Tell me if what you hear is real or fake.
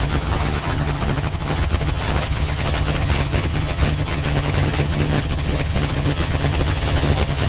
fake